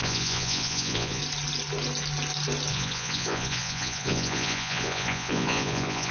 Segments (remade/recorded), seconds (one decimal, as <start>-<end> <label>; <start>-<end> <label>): 0.0-1.2 remade; 1.2-2.7 recorded; 2.7-6.1 remade